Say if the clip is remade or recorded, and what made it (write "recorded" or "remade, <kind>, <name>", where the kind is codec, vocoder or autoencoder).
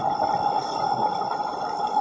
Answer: recorded